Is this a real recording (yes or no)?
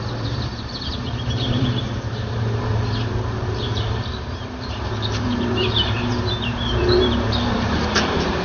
no